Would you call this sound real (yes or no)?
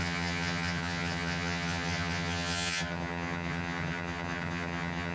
no